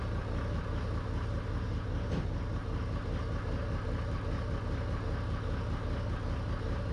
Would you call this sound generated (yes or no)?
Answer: no